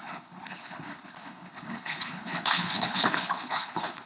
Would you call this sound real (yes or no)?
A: no